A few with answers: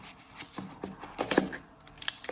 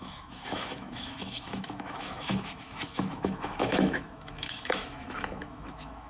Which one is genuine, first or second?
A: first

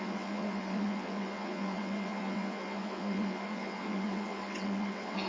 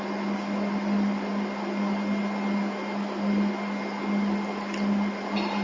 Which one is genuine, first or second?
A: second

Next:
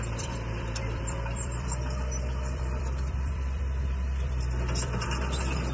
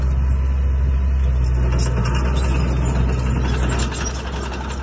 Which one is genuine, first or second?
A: second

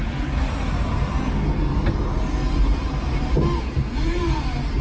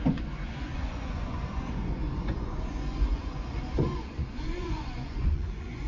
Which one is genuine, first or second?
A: first